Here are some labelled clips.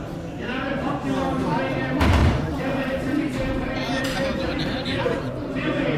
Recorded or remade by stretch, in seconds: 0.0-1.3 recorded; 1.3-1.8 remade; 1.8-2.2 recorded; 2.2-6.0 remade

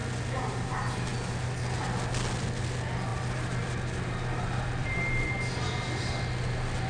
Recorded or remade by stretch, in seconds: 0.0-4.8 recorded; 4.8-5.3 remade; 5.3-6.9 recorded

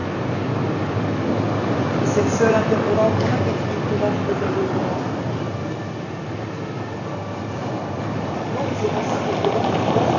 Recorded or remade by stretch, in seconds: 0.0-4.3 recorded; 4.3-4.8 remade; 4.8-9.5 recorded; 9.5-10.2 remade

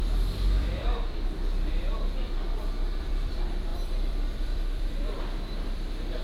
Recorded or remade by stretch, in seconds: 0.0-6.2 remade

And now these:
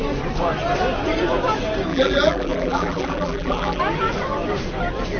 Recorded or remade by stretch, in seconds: 0.0-1.9 recorded; 1.9-3.8 remade; 3.8-5.2 recorded

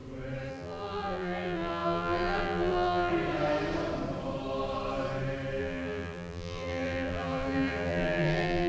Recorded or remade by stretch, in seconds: 0.0-0.5 recorded; 0.5-3.1 remade; 3.1-5.6 recorded; 5.6-8.7 remade

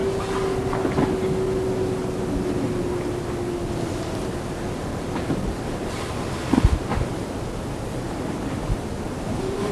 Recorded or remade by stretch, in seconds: 0.0-3.7 recorded; 3.7-9.7 remade